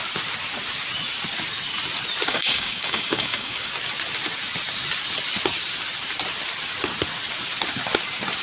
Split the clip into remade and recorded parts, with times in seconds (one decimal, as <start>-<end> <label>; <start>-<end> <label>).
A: 0.0-2.3 recorded; 2.3-3.7 remade; 3.7-8.4 recorded